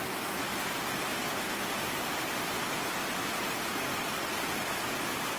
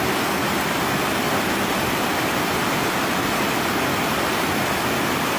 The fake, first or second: second